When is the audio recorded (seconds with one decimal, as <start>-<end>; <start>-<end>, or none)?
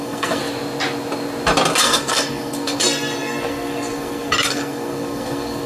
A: 0.4-1.8